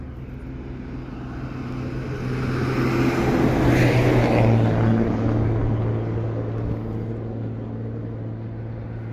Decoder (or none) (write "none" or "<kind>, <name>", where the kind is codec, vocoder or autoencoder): none